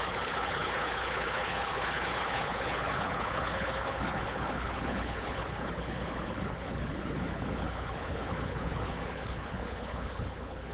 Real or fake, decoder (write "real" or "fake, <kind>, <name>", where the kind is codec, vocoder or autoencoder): fake, codec, HILCodec